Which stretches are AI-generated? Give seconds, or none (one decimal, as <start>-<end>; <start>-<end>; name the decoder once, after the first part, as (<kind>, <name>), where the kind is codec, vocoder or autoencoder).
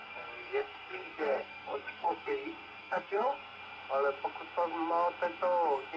0.0-3.6 (codec, SNAC)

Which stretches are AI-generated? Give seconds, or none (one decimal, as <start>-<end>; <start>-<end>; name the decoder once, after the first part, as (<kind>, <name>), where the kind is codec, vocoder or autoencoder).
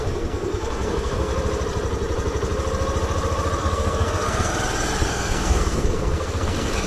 0.0-1.3 (codec, SNAC); 3.6-4.5; 5.0-6.9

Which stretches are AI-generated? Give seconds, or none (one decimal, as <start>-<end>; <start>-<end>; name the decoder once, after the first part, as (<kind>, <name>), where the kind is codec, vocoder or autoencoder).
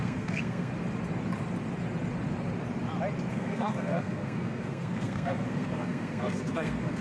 0.0-0.7 (codec, SNAC); 3.3-7.0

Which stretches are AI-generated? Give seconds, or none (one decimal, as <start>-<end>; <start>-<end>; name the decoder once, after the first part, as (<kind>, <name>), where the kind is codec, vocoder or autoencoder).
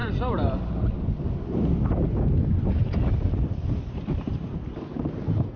0.0-0.7 (vocoder, BigVGAN v2)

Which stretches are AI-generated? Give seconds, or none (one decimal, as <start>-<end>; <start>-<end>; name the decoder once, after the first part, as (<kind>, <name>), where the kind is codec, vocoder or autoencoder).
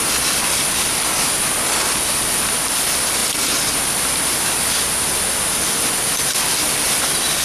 none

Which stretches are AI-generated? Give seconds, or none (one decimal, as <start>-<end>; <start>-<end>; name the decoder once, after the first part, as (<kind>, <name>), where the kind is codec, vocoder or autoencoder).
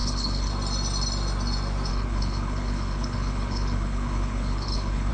0.0-0.5 (codec, HILCodec); 1.9-5.1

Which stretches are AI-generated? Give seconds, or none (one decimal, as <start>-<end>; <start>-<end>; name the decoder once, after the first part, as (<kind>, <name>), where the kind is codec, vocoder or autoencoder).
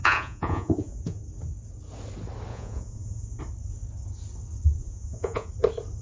0.0-1.2 (vocoder, Vocos); 2.5-3.4; 4.8-5.5